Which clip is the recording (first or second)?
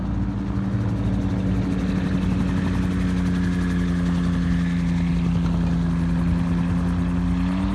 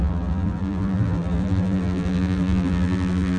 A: first